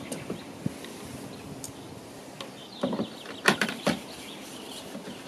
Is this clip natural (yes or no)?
yes